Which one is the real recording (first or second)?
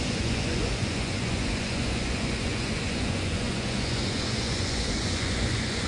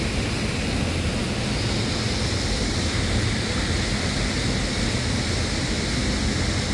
second